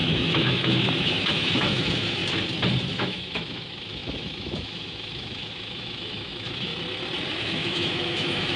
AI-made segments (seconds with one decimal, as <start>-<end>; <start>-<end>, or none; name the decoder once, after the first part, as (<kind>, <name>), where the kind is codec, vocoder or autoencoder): 0.0-2.2 (autoencoder, DAC-VAE); 2.9-6.7; 7.3-8.6